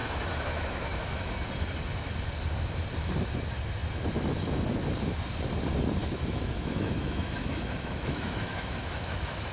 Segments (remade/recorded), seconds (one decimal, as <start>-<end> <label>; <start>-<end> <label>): 0.0-1.3 remade; 1.3-6.0 recorded; 6.0-9.5 remade